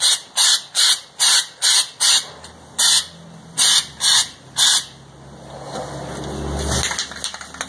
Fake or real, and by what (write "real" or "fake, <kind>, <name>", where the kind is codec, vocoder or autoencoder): real